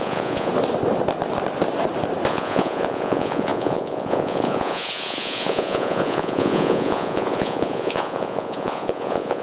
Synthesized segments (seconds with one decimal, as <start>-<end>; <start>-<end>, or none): 0.0-0.5; 2.3-9.4